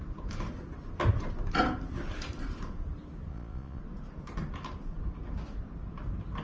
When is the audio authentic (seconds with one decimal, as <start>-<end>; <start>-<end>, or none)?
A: 0.0-3.3; 3.8-6.4